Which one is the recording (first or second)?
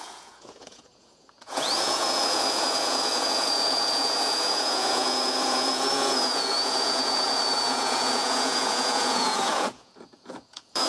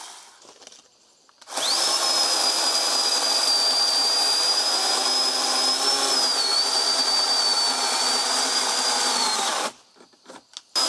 second